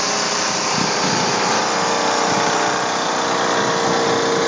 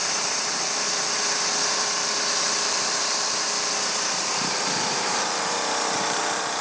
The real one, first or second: first